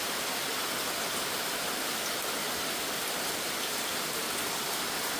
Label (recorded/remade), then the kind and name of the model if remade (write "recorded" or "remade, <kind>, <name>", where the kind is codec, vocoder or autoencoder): remade, vocoder, BigVGAN v2